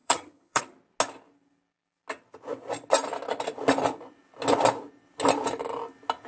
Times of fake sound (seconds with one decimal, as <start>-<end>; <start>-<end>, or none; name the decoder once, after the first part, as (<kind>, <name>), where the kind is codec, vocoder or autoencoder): 0.0-0.6 (vocoder, HiFi-GAN)